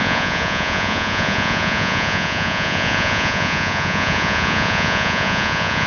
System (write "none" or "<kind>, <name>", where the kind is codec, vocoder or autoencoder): vocoder, Vocos